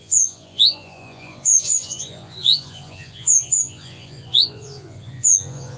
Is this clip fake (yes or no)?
yes